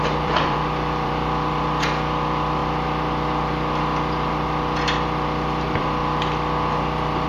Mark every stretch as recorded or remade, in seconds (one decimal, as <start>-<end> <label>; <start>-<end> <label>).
0.0-2.6 remade; 2.6-4.3 recorded; 4.3-6.0 remade; 6.0-7.3 recorded